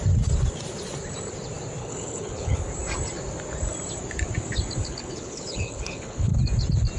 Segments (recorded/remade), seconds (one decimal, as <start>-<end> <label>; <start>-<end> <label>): 0.0-1.8 recorded; 1.8-2.7 remade; 2.7-4.8 recorded; 4.8-6.4 remade; 6.4-7.0 recorded